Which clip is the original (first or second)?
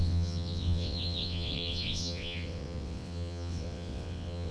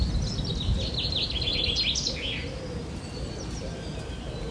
second